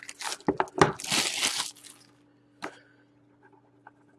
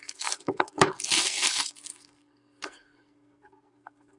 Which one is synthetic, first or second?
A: second